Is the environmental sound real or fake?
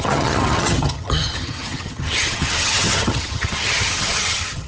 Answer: fake